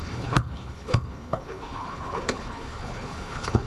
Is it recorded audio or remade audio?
remade